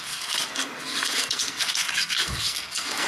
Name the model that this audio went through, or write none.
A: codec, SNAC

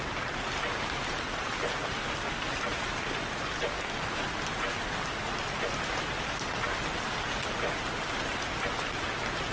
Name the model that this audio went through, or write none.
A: none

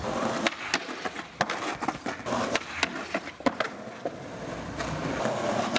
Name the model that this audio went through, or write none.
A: none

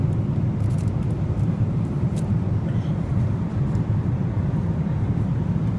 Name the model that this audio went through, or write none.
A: none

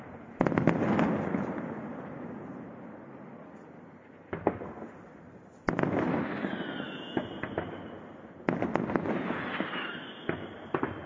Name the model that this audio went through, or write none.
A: none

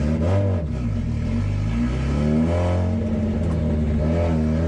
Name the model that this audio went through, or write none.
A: none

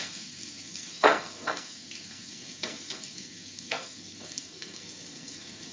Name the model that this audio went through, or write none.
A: codec, SNAC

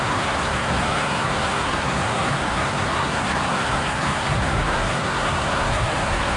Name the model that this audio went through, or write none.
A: codec, SNAC